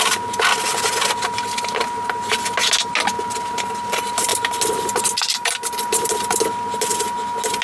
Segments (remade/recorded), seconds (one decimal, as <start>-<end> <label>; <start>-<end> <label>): 0.0-7.6 recorded